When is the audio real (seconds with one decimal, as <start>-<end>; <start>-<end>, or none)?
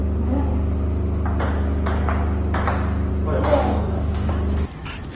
0.0-3.6; 4.3-5.1